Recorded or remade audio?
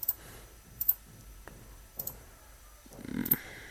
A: remade